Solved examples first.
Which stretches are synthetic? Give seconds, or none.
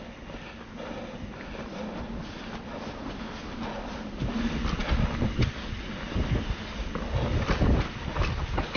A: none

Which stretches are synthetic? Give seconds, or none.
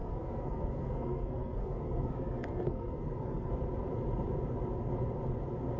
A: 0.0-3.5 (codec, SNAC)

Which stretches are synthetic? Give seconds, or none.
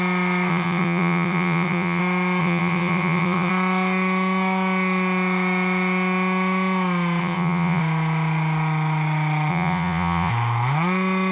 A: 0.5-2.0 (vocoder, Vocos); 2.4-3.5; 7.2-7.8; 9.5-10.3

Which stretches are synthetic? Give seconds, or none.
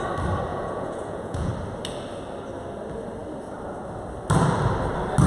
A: 0.5-1.5 (vocoder, Vocos)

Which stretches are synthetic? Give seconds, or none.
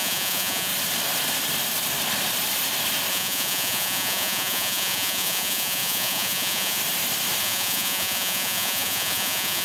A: 0.0-0.7 (vocoder, Vocos); 3.1-6.8; 7.4-9.6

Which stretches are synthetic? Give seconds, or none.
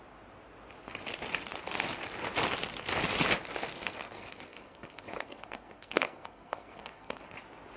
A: 3.7-7.2 (codec, SNAC)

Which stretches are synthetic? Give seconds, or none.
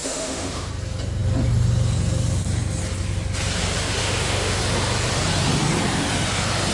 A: 0.0-0.7 (autoencoder, DAC-VAE); 4.0-4.6